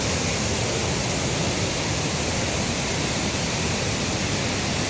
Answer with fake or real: real